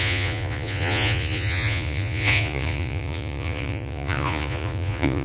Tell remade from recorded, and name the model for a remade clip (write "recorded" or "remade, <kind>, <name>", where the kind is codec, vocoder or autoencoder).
remade, vocoder, Vocos